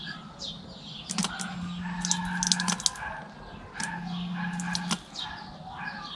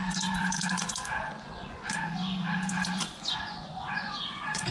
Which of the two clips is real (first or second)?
first